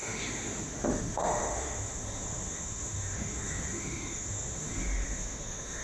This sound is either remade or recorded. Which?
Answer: remade